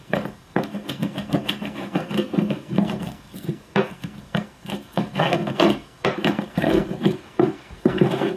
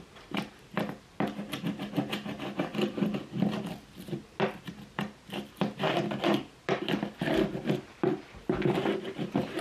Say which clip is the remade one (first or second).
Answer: first